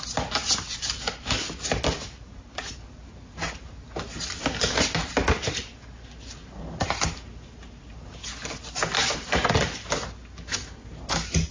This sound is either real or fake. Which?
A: real